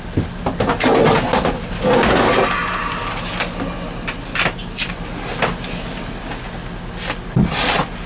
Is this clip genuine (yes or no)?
yes